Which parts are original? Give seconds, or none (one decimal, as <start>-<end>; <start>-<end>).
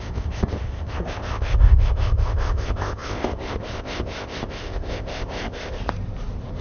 5.8-6.6